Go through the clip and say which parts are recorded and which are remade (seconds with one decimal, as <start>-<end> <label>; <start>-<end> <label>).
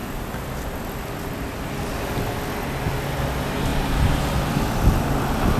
0.0-5.6 recorded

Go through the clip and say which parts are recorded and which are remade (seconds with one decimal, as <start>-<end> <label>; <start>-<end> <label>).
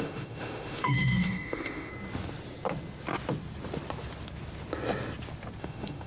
0.0-1.9 remade; 1.9-5.6 recorded; 5.6-6.1 remade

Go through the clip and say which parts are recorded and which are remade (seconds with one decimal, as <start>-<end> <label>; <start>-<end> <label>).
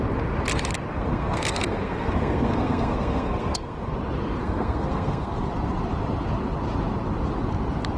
0.0-0.9 recorded; 0.9-3.9 remade; 3.9-4.4 recorded; 4.4-5.3 remade; 5.3-8.0 recorded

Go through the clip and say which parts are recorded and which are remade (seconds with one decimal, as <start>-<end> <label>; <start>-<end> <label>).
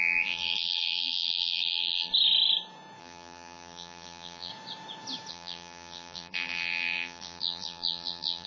0.0-2.1 remade; 2.1-3.0 recorded; 3.0-4.5 remade; 4.5-5.3 recorded; 5.3-8.5 remade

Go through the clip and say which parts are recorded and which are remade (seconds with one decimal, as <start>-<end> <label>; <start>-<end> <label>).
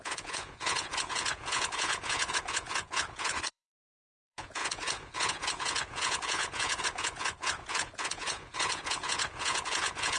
0.0-10.2 remade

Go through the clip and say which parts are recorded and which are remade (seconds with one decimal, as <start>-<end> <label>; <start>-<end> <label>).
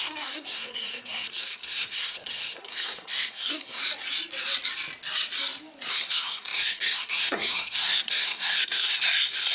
0.0-3.8 remade; 3.8-5.9 recorded; 5.9-9.5 remade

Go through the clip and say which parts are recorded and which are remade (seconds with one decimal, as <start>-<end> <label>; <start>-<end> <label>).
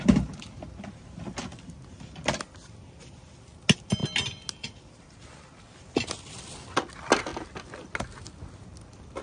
0.0-9.2 recorded